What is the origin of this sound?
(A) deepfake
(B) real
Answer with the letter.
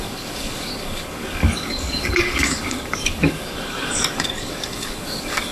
A